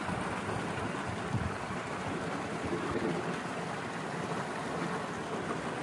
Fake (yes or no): no